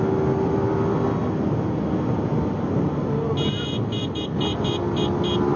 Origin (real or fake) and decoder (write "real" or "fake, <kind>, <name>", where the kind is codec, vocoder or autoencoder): real